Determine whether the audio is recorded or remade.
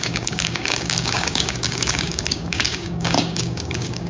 remade